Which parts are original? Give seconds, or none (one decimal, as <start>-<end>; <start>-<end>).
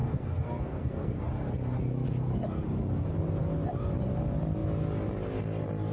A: 1.2-5.9